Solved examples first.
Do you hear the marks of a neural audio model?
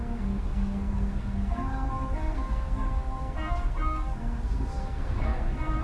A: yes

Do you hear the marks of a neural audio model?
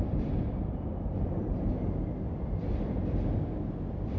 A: no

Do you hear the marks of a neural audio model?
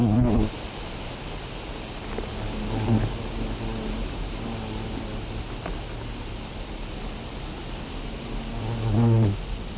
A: no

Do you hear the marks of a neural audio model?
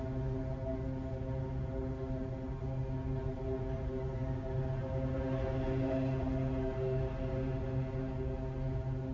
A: no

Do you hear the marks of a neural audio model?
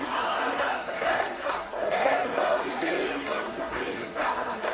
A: yes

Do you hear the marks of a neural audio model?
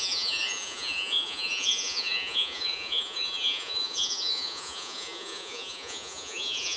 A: yes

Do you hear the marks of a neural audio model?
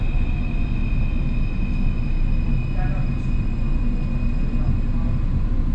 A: no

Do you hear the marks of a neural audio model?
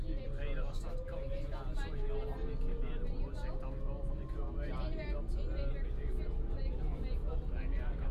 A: no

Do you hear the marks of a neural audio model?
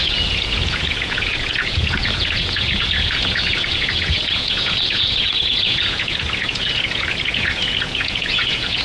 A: yes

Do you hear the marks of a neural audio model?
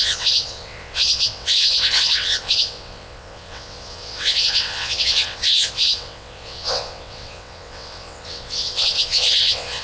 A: yes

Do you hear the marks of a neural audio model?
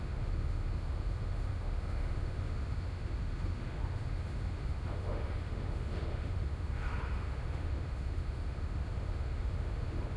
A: yes